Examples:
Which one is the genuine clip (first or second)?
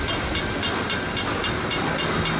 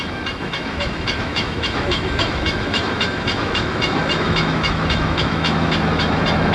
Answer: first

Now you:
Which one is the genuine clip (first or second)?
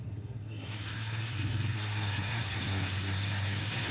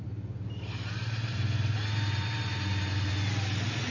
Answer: second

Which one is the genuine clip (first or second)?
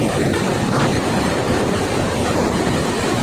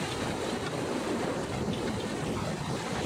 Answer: second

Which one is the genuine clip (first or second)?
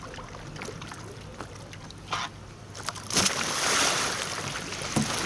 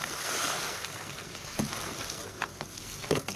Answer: first